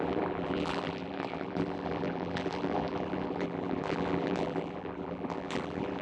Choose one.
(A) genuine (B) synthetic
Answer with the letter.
B